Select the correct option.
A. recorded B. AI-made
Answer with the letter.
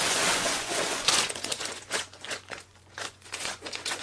B